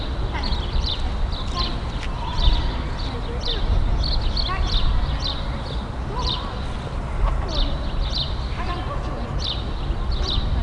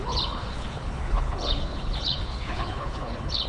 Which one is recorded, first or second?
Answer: first